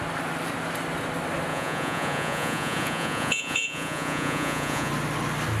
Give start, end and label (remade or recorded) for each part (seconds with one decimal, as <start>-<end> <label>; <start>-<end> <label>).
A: 0.0-1.5 recorded; 1.5-4.9 remade; 4.9-5.6 recorded